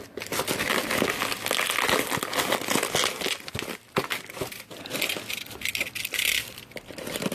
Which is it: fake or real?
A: real